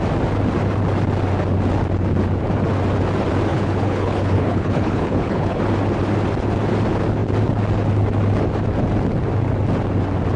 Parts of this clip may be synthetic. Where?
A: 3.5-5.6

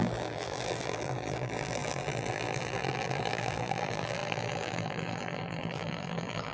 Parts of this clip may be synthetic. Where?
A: 0.0-6.5

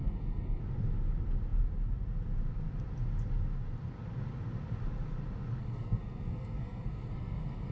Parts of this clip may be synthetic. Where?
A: 0.0-0.6; 5.6-7.7

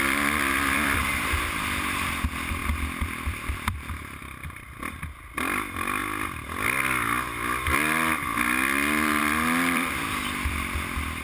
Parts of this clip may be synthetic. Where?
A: 0.0-6.0; 9.2-11.2

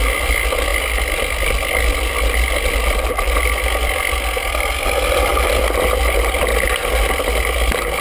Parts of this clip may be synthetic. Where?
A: none

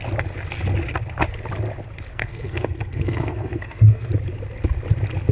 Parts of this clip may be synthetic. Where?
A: 2.1-4.1

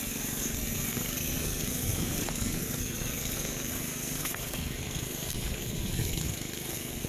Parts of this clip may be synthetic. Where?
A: 0.0-7.1